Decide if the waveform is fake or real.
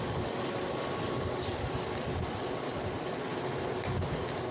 real